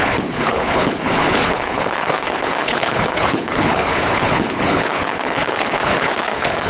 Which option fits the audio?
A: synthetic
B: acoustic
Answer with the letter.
A